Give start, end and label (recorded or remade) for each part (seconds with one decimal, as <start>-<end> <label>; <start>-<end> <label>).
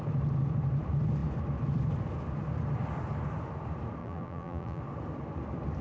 0.0-4.0 recorded; 4.0-4.8 remade; 4.8-5.8 recorded